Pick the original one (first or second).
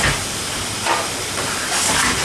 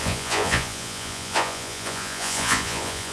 first